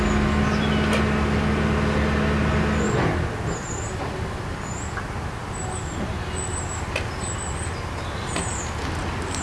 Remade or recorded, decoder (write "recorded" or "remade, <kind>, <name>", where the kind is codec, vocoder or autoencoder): recorded